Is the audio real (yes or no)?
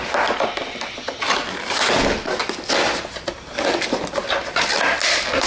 yes